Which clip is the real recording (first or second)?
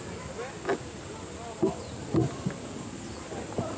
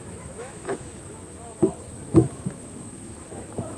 first